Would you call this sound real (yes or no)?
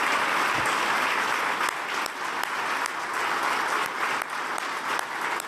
yes